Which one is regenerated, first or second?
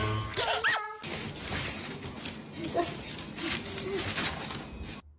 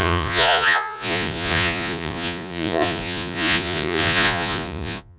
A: second